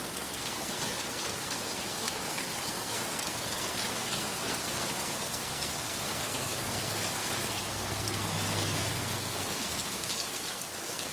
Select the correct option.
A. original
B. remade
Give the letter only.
B